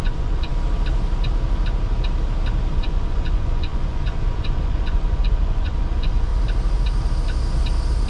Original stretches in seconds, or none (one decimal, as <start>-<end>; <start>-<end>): 0.5-2.7; 6.3-8.1